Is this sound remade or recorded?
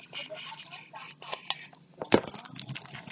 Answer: recorded